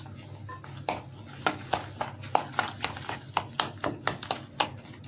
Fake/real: real